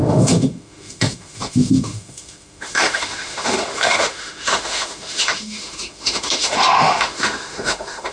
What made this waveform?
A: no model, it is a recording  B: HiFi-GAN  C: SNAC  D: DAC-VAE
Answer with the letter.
D